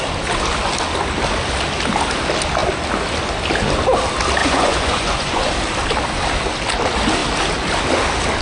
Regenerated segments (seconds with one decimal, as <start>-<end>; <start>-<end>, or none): 4.4-5.5